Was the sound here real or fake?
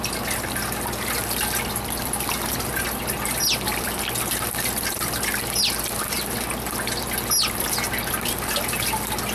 real